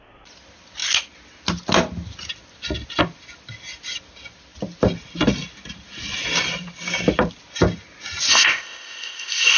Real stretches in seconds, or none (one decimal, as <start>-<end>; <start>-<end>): 0.0-8.3